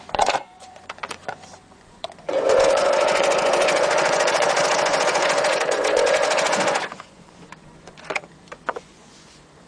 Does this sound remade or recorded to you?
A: remade